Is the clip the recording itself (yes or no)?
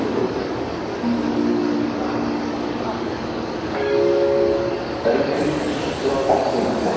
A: no